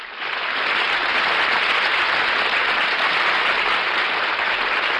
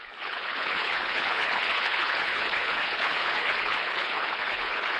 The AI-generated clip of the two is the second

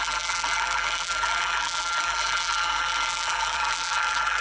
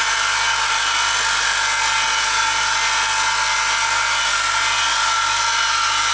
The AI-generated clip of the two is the first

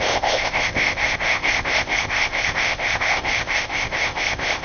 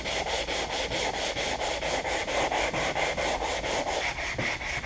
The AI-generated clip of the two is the first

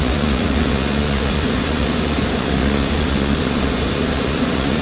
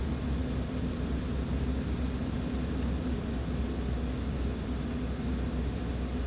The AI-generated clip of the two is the first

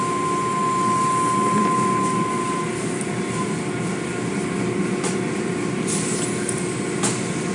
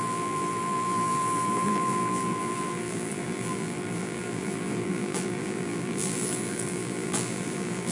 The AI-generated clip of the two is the second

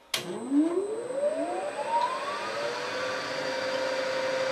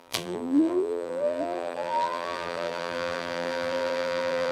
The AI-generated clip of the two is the second